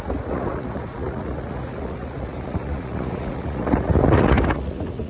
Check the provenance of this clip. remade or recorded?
remade